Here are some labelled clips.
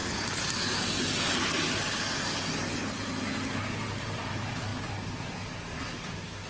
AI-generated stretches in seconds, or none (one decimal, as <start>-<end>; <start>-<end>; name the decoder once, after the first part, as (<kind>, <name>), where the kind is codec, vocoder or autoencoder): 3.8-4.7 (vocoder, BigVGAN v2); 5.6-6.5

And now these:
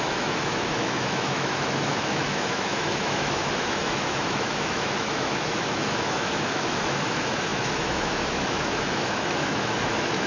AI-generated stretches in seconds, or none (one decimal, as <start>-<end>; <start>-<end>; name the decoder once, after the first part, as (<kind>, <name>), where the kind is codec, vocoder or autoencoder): 0.0-10.3 (autoencoder, DAC-VAE)

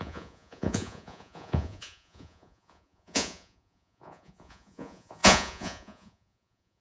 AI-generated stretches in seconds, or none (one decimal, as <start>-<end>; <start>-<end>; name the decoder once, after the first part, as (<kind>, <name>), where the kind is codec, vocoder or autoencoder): 0.0-6.8 (vocoder, Vocos)

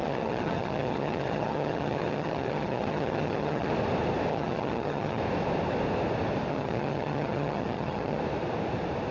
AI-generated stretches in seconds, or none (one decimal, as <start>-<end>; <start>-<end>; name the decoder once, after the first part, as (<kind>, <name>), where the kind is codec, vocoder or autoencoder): 0.0-3.7 (vocoder, HiFi-GAN); 4.3-5.2; 6.5-8.2